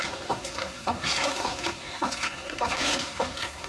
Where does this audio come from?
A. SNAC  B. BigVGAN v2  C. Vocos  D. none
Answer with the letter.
A